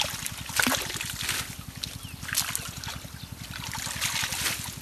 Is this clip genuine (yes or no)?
yes